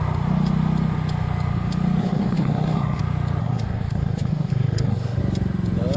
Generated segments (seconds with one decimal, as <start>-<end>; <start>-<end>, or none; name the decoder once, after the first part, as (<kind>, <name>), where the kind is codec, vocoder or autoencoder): 2.0-3.0 (codec, SNAC); 3.4-5.2